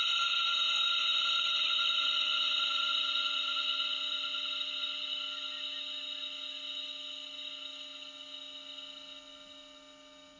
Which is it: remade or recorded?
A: recorded